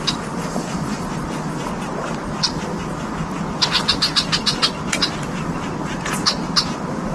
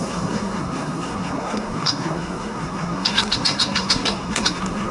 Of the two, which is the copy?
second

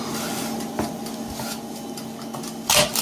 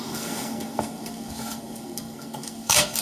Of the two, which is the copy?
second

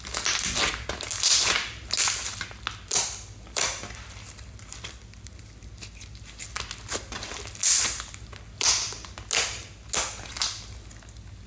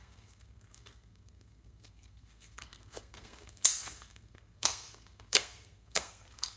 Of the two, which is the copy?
second